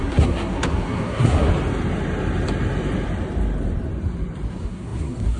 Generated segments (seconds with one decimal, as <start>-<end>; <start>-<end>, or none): 0.0-1.5; 4.5-5.4